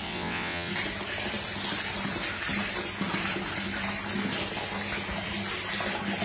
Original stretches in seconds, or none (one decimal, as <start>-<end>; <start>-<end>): 0.7-6.2